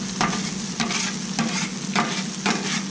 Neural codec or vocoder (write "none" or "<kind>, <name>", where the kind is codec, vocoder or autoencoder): none